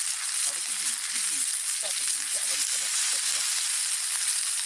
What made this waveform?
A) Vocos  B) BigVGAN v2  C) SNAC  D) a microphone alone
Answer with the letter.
D